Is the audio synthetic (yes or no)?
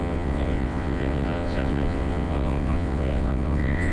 yes